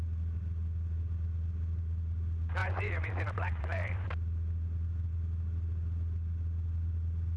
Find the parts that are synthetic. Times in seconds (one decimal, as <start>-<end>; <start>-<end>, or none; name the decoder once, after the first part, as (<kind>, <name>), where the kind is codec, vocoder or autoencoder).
2.6-4.1 (vocoder, Vocos)